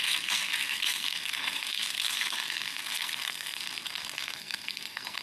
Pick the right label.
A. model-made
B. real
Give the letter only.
A